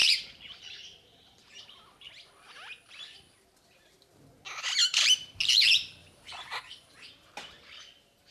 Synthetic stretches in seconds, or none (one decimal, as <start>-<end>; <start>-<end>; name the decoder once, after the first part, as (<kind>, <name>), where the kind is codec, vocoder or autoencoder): 0.0-2.1 (vocoder, BigVGAN v2); 4.8-5.4; 6.0-7.3